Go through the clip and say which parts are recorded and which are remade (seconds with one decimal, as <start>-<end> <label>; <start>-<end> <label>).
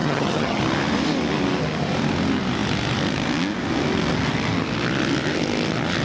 0.0-0.6 remade; 0.6-6.0 recorded